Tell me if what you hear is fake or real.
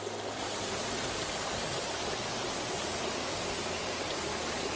real